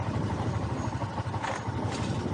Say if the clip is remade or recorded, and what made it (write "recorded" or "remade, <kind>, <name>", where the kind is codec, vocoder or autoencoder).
recorded